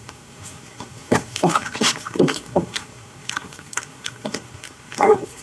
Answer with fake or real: fake